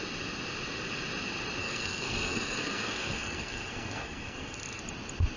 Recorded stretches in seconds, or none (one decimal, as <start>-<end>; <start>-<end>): 0.0-1.6; 4.8-5.4